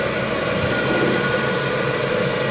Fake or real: real